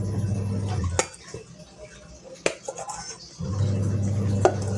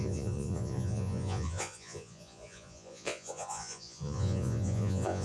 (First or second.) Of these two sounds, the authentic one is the first